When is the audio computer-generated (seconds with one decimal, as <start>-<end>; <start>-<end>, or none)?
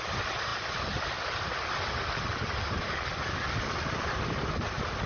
none